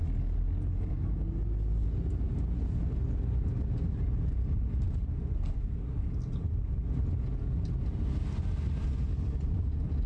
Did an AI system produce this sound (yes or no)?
no